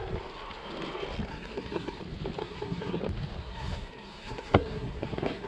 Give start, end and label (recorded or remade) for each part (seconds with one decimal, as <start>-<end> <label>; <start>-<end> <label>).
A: 0.0-1.3 recorded; 1.3-2.0 remade; 2.0-2.4 recorded; 2.4-3.0 remade; 3.0-3.4 recorded; 3.4-5.5 remade